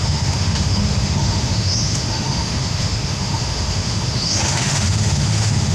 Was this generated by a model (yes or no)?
yes